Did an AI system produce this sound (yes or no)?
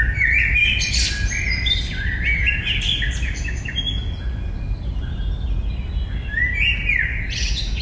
no